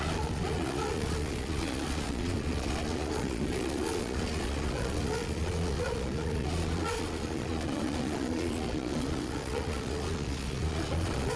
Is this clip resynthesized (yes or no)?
yes